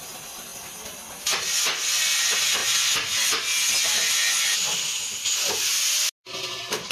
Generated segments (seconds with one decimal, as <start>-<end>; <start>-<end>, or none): none